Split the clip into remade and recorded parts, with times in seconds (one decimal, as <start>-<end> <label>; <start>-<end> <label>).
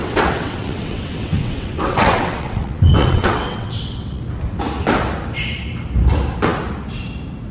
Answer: 0.0-4.2 remade; 4.2-7.5 recorded